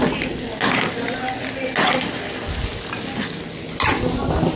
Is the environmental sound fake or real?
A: real